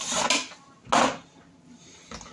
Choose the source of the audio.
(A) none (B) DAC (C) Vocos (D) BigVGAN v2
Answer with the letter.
A